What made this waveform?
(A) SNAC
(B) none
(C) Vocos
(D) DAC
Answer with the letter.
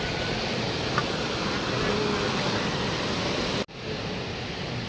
B